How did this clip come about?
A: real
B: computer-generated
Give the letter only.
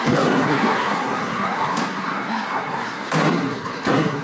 B